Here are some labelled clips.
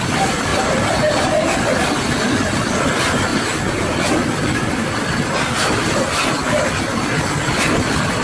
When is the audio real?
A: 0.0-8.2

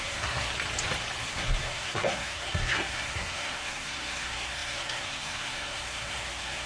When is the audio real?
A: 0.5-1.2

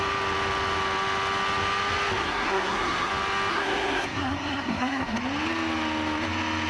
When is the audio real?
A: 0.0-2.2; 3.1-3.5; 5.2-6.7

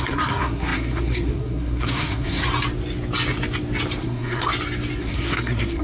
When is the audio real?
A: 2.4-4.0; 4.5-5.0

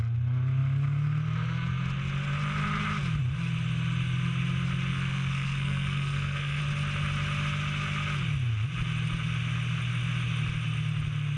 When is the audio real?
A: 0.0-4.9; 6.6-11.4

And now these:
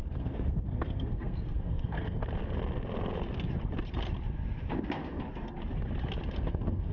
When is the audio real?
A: 2.2-6.3

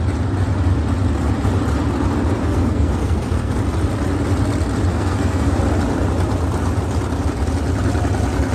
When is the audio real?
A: 0.0-2.4; 3.6-4.9; 5.6-8.5

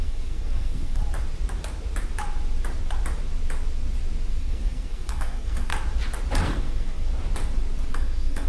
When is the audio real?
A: 1.0-4.3; 5.7-6.4; 7.1-7.9